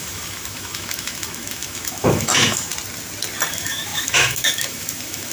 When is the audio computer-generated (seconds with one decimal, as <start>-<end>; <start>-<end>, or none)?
0.0-2.7; 3.5-5.3